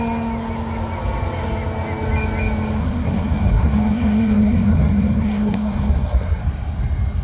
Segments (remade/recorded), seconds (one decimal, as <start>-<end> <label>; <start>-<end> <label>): 0.0-2.8 recorded; 2.8-6.4 remade; 6.4-7.2 recorded